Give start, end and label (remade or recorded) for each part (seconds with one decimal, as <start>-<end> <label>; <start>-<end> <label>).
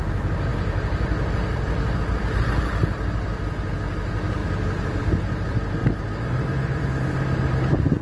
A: 0.0-5.8 recorded; 5.8-6.8 remade; 6.8-8.0 recorded